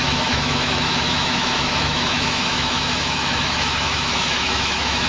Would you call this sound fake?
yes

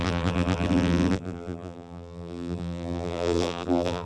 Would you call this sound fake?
yes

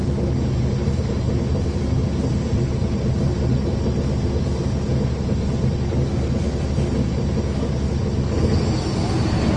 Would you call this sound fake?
no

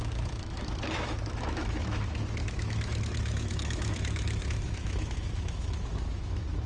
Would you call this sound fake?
yes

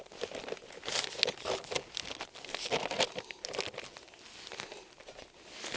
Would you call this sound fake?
no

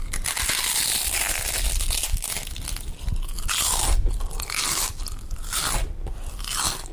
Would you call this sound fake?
no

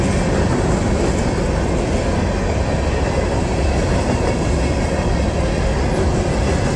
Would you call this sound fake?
no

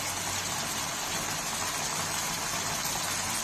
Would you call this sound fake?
no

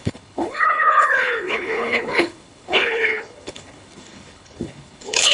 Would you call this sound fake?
yes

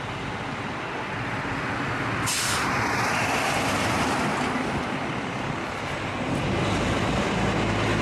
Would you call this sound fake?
no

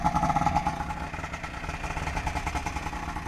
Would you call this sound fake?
no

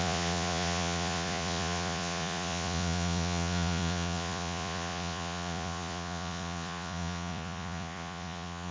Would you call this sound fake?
yes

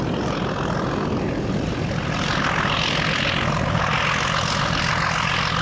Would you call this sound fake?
no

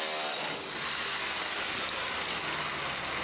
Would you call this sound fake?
no